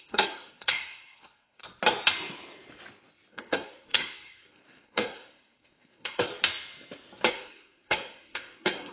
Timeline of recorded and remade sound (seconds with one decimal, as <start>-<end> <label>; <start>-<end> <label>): 0.0-1.6 remade; 1.6-3.3 recorded; 3.3-6.3 remade; 6.3-7.3 recorded; 7.3-8.9 remade